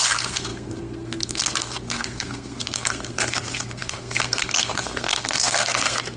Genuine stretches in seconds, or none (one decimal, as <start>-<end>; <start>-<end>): none